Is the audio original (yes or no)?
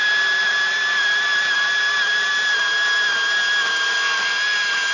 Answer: yes